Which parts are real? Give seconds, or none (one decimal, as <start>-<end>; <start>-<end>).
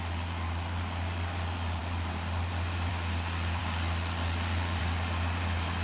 0.0-5.8